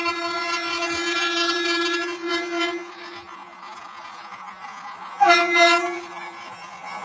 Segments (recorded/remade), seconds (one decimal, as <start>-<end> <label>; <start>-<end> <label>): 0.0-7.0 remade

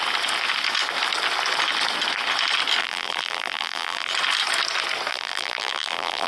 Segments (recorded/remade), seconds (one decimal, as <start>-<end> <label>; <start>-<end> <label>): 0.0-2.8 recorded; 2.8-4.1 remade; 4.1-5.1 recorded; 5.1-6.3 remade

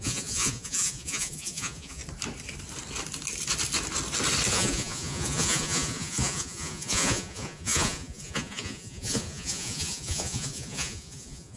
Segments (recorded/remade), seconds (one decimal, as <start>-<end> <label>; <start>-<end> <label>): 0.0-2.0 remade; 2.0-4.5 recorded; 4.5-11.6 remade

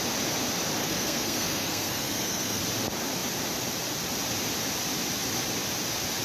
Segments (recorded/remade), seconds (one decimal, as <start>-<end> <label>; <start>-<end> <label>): 0.0-0.8 recorded; 0.8-2.6 remade; 2.6-6.2 recorded

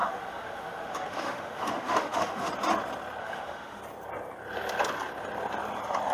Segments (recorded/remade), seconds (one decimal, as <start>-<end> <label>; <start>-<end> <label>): 0.0-2.5 remade; 2.5-3.2 recorded; 3.2-3.8 remade; 3.8-6.1 recorded